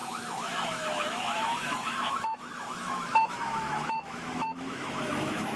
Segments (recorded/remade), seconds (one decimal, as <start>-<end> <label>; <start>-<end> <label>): 0.0-5.6 remade